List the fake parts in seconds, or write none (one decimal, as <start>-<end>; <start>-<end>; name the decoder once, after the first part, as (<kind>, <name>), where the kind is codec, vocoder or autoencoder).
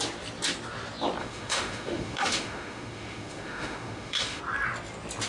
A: 1.2-4.4 (autoencoder, DAC-VAE)